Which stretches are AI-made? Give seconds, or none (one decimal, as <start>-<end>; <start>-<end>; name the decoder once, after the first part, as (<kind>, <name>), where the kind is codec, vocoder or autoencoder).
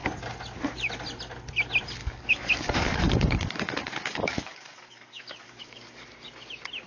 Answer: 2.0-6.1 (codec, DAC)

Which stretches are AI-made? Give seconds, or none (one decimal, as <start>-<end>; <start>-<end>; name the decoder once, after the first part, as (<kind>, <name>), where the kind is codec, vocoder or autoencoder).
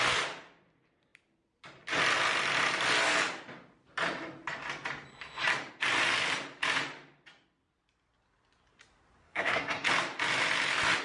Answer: 9.2-9.9 (codec, SNAC)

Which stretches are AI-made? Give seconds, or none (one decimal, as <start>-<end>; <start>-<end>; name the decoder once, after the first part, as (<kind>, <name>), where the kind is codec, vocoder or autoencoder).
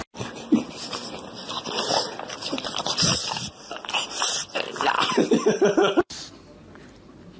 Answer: 5.8-6.3 (vocoder, Vocos)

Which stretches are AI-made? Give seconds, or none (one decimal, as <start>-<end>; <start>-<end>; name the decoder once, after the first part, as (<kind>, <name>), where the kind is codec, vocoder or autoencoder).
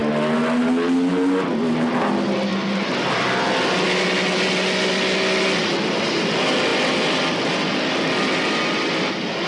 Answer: 2.5-3.3 (vocoder, BigVGAN v2)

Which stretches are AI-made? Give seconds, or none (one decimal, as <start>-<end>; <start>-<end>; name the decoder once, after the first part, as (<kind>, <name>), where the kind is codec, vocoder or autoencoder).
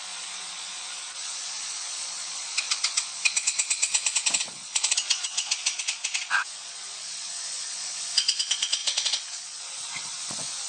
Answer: 0.0-10.7 (vocoder, Vocos)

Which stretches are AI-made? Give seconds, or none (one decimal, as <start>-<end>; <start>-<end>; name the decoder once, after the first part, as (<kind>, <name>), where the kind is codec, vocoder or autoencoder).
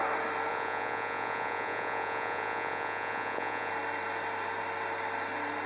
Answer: 0.5-3.7 (vocoder, Vocos)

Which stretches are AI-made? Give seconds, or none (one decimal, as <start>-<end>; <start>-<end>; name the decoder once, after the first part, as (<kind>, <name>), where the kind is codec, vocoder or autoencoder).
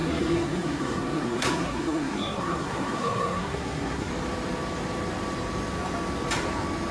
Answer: 0.0-4.1 (codec, SNAC)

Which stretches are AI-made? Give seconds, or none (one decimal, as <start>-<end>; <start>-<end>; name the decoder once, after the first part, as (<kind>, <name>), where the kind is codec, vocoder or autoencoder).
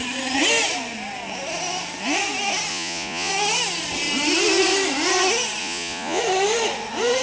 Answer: 2.7-3.3 (vocoder, Vocos); 5.6-6.2